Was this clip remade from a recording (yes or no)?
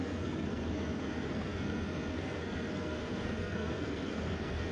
yes